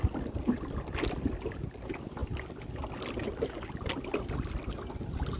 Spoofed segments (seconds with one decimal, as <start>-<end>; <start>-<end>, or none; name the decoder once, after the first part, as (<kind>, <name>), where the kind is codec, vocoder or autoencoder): none